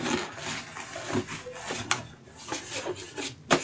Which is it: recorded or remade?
recorded